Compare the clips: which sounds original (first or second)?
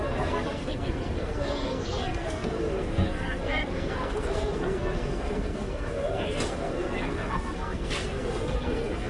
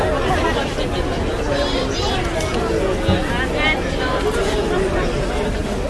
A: second